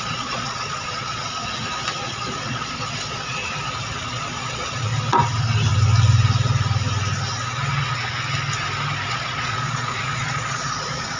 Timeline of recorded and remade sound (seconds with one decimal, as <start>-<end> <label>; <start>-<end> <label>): 0.0-1.4 remade; 1.4-2.0 recorded; 2.0-3.4 remade; 3.4-4.0 recorded; 4.0-4.9 remade; 4.9-9.1 recorded; 9.1-11.2 remade